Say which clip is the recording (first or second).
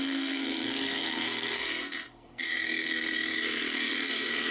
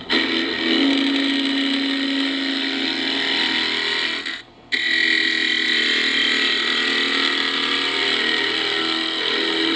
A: second